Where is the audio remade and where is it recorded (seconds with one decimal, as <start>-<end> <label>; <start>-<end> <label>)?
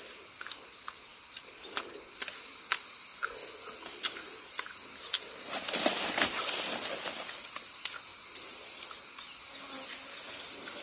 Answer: 0.0-10.8 recorded